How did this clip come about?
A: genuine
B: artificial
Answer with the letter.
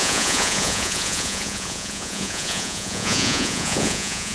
B